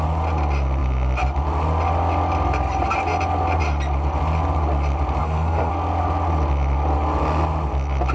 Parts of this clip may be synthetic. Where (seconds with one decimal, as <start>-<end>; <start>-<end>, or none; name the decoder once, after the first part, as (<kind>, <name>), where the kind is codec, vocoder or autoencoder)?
5.2-5.7 (codec, SNAC)